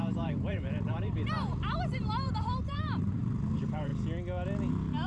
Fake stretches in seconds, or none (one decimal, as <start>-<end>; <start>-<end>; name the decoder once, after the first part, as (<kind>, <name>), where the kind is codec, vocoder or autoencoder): 0.0-3.9 (vocoder, BigVGAN v2)